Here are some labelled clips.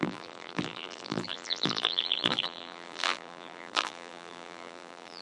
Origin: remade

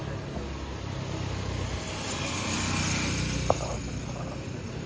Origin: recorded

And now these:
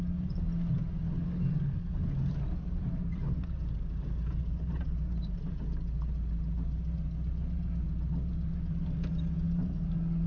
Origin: recorded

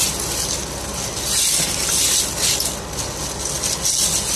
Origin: recorded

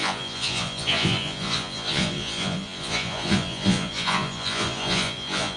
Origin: remade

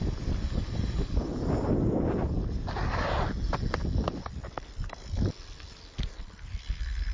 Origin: recorded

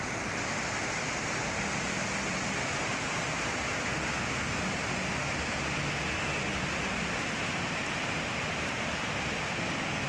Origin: recorded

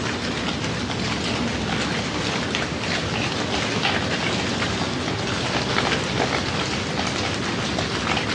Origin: recorded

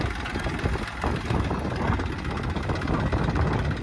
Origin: recorded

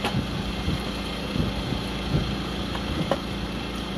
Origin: remade